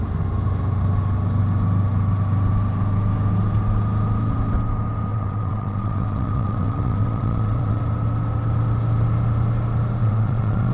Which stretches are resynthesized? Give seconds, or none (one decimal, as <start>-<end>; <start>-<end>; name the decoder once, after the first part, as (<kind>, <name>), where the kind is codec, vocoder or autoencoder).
5.1-7.8 (vocoder, WaveNeXt); 10.0-10.7